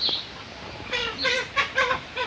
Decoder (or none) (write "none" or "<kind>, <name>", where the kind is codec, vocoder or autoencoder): none